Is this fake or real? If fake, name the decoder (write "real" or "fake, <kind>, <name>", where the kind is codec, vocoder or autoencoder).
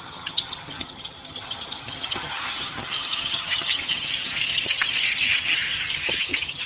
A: fake, vocoder, HiFi-GAN